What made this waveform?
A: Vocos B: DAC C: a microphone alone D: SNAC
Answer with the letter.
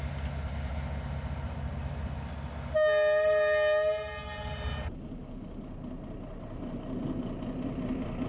C